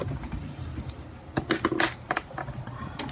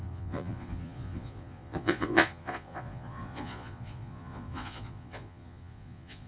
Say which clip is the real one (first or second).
first